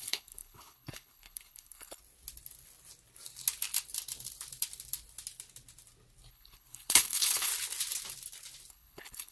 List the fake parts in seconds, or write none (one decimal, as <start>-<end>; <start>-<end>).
0.0-2.0; 6.3-7.5; 8.7-9.3